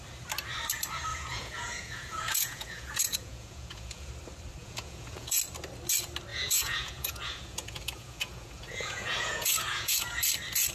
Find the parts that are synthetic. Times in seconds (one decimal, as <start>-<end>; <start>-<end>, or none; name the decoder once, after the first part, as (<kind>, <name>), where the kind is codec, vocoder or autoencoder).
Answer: 1.1-4.1 (vocoder, Vocos); 4.6-5.4; 6.3-10.2